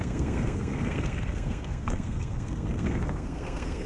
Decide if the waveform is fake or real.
fake